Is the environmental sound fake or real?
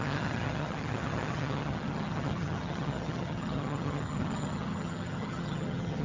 fake